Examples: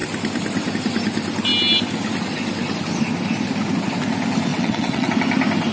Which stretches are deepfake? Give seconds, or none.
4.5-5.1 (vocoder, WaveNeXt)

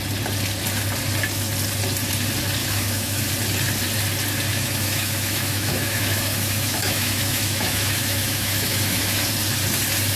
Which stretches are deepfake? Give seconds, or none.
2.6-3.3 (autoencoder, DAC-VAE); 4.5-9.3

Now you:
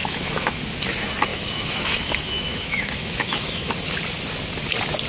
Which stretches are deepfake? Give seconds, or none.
0.0-0.6 (autoencoder, DAC-VAE); 1.3-3.7

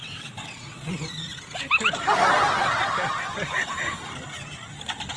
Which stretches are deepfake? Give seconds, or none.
0.0-0.9 (vocoder, WaveNeXt)